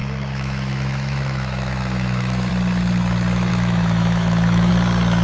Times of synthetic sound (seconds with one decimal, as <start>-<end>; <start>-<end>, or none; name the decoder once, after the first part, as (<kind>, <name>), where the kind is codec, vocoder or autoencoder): 0.0-2.5 (autoencoder, DAC-VAE); 3.5-4.7